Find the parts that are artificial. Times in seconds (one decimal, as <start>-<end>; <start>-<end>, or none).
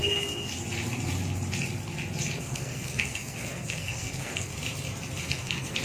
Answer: 0.0-0.5; 2.4-4.5; 5.2-5.8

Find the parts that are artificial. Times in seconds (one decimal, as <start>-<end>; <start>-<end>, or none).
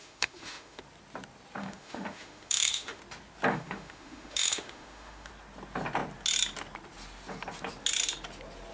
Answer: 0.0-0.8; 1.6-3.0; 3.5-5.3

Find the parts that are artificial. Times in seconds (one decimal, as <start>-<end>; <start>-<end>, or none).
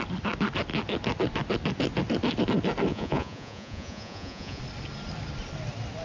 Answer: 2.9-4.6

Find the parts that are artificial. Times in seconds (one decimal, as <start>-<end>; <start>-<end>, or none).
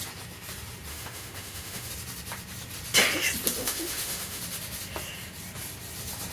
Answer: 0.9-1.9; 3.6-4.4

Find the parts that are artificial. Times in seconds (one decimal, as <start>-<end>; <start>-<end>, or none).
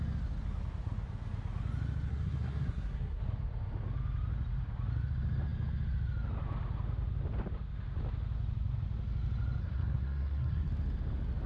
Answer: 2.1-3.2; 9.6-10.7